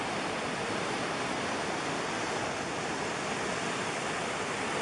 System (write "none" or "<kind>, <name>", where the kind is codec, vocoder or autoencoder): none